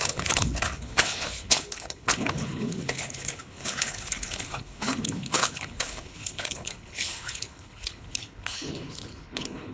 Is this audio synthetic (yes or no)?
yes